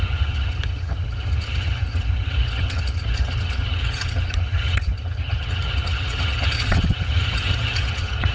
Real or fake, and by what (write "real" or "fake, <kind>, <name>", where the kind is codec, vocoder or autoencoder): fake, vocoder, HiFi-GAN